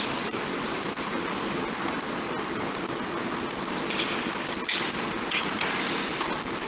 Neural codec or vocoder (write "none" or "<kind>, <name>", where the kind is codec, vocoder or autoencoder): none